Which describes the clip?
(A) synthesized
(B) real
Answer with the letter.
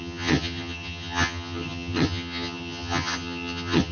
A